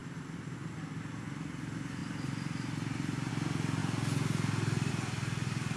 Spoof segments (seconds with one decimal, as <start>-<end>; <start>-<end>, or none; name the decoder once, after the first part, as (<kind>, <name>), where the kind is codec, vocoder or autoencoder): 0.0-0.7 (vocoder, BigVGAN v2); 2.0-3.3